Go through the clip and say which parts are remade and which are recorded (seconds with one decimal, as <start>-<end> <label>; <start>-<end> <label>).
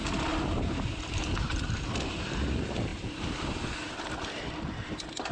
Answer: 0.0-1.8 remade; 1.8-2.9 recorded; 2.9-3.9 remade; 3.9-5.3 recorded